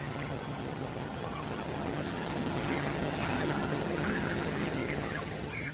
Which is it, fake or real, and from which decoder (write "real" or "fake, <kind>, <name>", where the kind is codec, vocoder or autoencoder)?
fake, vocoder, HiFi-GAN